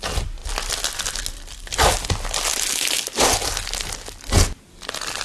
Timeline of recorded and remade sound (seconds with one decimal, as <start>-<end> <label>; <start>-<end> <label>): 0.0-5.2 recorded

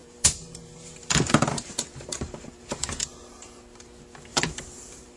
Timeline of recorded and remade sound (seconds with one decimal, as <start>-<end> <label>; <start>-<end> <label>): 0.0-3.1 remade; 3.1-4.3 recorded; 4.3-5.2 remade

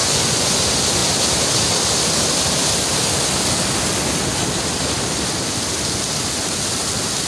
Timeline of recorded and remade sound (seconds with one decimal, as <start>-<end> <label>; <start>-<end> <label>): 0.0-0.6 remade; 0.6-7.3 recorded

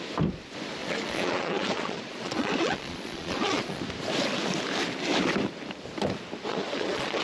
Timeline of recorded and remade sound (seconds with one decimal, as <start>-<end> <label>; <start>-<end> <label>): 0.0-0.8 recorded; 0.8-3.8 remade; 3.8-6.5 recorded; 6.5-7.2 remade

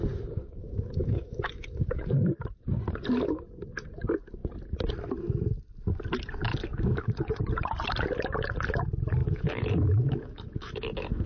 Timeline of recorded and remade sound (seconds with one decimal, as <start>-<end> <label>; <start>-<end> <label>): 0.0-0.6 recorded; 0.6-2.1 remade; 2.1-6.5 recorded; 6.5-7.4 remade; 7.4-9.2 recorded; 9.2-11.3 remade

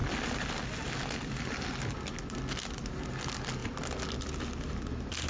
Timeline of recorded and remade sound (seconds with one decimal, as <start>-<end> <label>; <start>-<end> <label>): 0.0-5.3 recorded

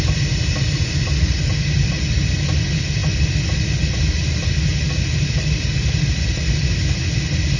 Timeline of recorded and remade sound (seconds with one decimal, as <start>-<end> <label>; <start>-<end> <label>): 0.0-7.6 recorded